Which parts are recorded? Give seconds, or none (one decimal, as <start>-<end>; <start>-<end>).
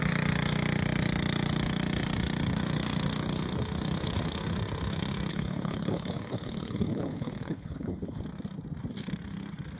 0.0-5.3; 8.2-9.8